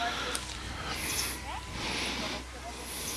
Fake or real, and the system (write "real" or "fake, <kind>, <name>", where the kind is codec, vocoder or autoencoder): real